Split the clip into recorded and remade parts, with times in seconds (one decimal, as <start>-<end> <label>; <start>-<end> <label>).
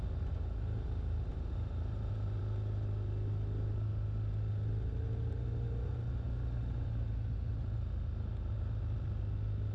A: 0.0-1.3 recorded; 1.3-2.4 remade; 2.4-9.7 recorded